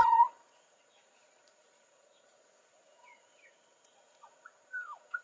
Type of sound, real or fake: fake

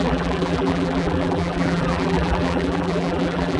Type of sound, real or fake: fake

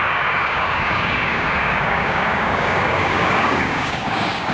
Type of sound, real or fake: fake